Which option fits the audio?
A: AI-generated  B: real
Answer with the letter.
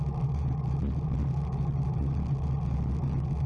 B